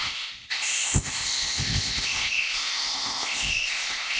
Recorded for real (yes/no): no